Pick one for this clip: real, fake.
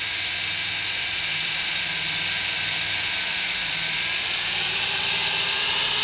fake